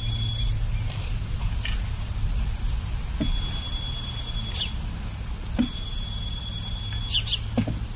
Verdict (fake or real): real